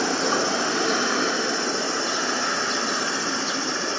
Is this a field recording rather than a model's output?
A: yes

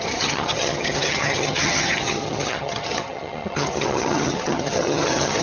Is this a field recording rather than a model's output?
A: no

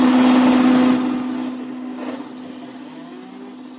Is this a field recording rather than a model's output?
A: yes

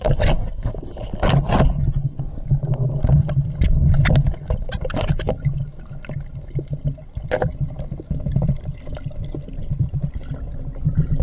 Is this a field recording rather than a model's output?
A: yes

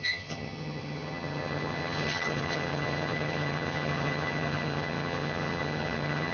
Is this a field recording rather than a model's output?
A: no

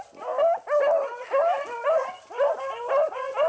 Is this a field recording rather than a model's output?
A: yes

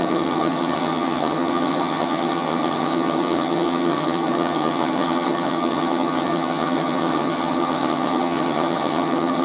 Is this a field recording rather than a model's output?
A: no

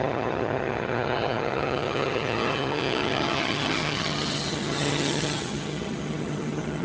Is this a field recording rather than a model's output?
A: no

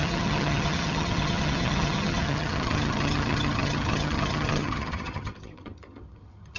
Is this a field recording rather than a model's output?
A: no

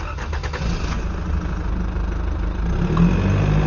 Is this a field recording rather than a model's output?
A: yes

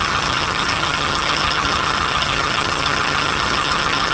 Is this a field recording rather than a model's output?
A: no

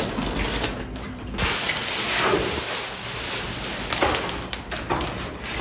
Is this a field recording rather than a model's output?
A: yes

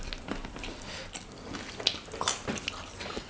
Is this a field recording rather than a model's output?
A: yes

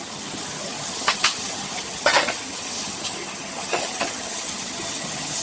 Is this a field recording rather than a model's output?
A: no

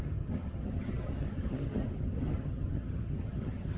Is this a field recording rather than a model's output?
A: no